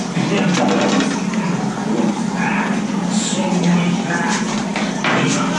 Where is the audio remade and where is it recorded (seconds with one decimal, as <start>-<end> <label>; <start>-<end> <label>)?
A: 0.0-5.6 recorded